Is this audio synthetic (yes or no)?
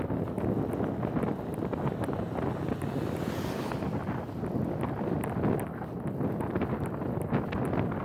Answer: no